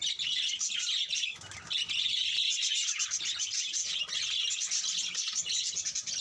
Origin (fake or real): real